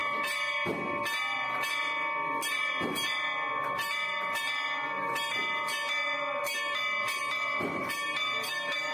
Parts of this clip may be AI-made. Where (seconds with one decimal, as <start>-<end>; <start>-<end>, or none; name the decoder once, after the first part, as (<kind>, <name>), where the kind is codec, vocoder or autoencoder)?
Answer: none